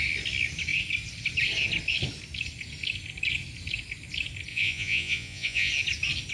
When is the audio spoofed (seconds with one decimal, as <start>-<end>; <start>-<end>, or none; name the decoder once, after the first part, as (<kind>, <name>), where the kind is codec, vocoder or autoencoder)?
4.5-5.7 (vocoder, Vocos)